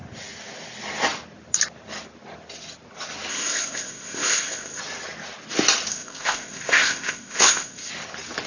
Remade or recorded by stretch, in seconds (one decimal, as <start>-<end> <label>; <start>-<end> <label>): 0.0-3.3 recorded; 3.3-4.8 remade; 4.8-5.9 recorded; 5.9-7.9 remade; 7.9-8.5 recorded

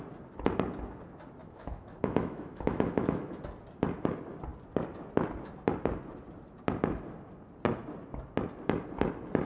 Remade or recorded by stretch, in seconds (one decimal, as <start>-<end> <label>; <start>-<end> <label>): 0.0-1.4 recorded; 1.4-3.4 remade; 3.4-9.5 recorded

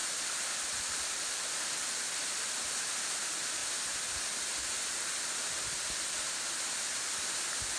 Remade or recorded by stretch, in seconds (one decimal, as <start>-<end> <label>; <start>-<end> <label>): 0.0-2.1 recorded; 2.1-3.6 remade; 3.6-6.5 recorded; 6.5-7.8 remade

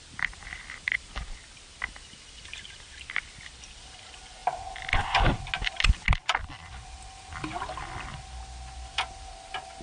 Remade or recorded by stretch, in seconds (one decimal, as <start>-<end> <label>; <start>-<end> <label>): 0.0-9.8 recorded